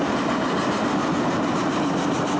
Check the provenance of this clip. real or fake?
real